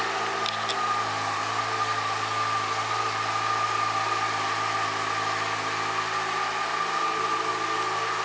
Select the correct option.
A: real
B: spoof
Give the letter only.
A